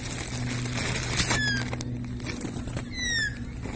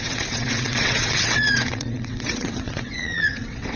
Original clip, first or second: first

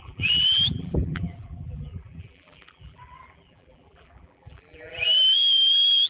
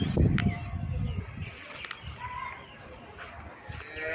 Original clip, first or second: second